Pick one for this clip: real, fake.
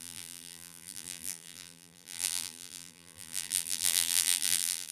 fake